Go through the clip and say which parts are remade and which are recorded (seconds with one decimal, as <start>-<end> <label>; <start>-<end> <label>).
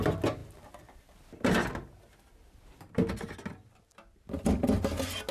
0.0-5.3 recorded